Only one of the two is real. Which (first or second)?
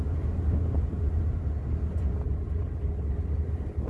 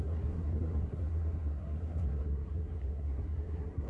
first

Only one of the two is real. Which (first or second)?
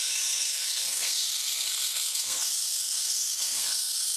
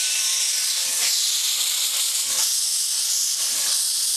second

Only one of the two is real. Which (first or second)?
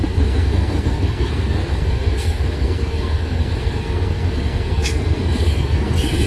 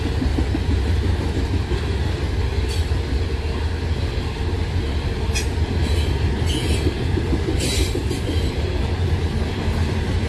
second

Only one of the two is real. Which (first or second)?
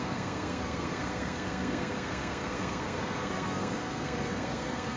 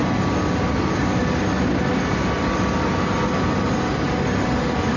second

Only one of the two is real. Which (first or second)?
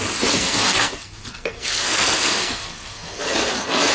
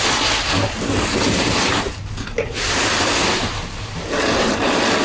second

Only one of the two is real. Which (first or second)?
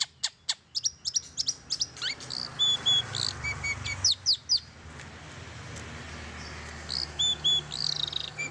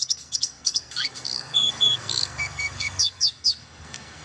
first